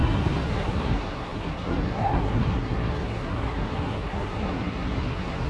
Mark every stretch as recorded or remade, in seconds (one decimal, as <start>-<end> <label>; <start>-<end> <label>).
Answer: 0.0-5.5 remade